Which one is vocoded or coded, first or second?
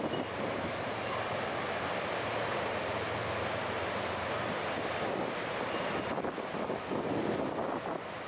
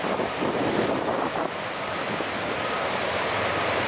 second